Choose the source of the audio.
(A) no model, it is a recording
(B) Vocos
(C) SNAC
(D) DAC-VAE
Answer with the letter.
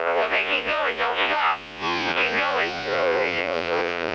B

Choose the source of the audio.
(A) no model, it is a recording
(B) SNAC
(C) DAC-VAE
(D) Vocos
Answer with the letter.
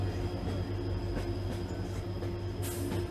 A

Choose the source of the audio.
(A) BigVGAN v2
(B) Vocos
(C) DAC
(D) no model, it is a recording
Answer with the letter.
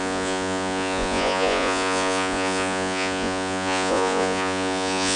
B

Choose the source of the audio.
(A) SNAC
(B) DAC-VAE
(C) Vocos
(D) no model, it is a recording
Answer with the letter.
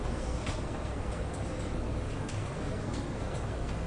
A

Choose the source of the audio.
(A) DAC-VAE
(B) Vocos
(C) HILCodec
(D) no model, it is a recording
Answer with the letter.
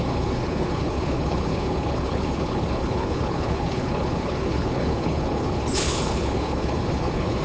C